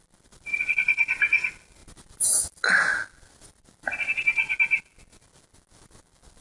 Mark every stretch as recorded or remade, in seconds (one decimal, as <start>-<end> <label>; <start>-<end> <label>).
0.0-6.4 recorded

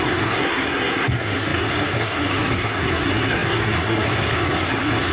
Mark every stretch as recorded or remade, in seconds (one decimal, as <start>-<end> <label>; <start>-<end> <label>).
0.0-5.1 remade

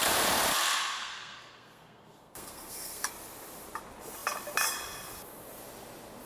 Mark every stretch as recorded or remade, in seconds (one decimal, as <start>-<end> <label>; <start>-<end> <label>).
0.0-1.0 recorded; 1.0-3.1 remade; 3.1-6.3 recorded